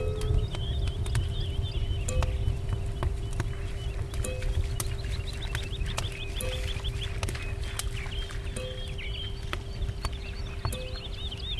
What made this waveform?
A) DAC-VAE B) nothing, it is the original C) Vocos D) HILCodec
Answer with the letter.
B